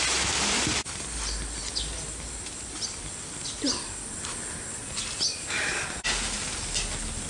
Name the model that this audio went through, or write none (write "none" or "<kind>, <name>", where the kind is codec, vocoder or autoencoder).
none